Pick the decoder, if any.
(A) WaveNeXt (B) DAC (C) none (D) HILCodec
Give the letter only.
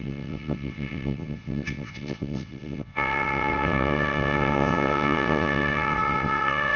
A